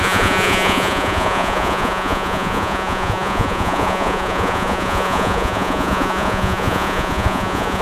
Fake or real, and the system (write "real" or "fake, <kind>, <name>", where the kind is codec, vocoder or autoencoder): fake, vocoder, Vocos